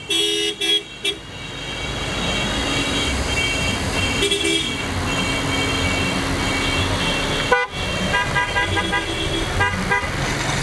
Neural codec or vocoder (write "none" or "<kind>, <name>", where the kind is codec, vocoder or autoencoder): none